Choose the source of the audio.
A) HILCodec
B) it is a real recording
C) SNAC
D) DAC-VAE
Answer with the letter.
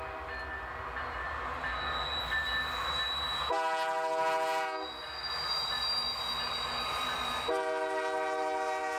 B